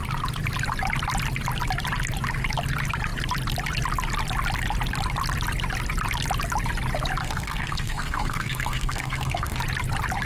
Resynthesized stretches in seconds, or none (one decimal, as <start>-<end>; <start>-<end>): 7.2-9.6